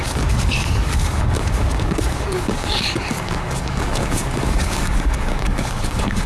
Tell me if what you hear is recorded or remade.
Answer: remade